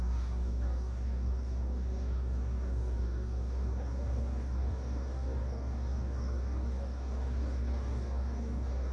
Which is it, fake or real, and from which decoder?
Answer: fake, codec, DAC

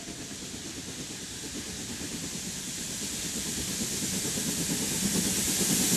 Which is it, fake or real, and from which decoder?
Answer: real